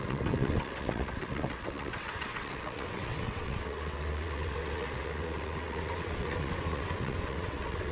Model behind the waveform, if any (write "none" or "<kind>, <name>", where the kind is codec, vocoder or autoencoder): vocoder, WaveNeXt